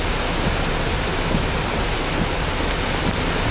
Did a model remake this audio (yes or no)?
no